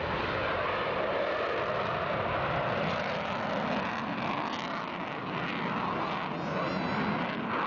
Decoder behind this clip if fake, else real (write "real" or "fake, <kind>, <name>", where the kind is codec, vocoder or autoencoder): real